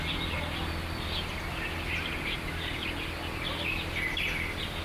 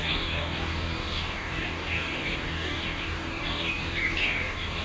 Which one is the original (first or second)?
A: first